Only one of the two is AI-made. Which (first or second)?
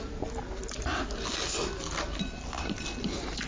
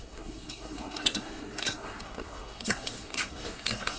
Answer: second